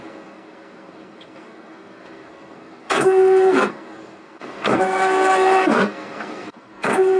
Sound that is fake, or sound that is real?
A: fake